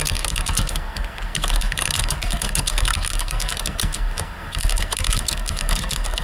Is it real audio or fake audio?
fake